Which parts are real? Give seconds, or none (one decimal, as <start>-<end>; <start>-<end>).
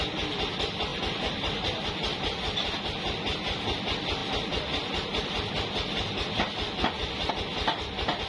0.0-8.3